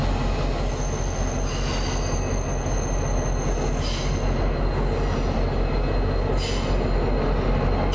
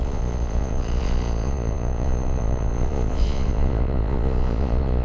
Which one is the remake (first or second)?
second